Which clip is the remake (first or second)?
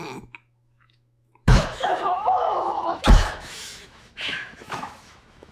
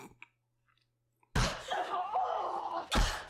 first